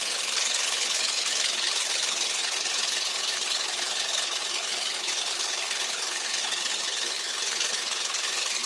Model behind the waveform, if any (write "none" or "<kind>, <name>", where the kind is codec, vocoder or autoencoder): codec, HILCodec